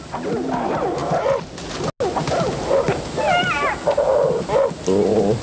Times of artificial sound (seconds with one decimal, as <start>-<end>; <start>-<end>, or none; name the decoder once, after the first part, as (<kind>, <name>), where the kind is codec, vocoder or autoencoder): none